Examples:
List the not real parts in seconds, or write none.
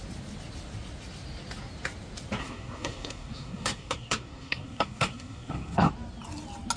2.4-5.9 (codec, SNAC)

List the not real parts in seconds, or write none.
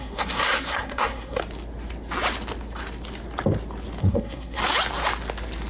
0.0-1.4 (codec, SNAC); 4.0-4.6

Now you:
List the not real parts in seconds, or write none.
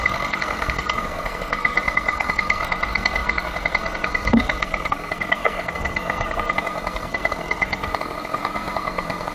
0.0-9.3 (codec, SNAC)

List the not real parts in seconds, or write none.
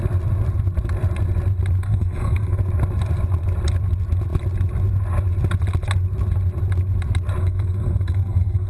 1.8-2.6 (codec, SNAC); 7.4-8.7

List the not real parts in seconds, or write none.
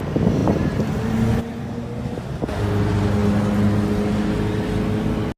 none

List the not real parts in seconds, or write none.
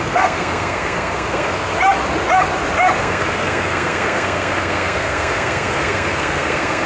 0.0-1.7 (codec, SNAC); 3.0-6.9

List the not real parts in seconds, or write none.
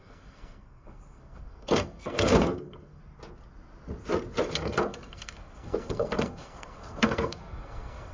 0.0-3.0 (codec, SNAC); 4.5-8.1